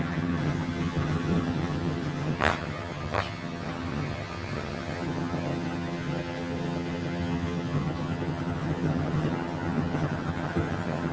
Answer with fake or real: fake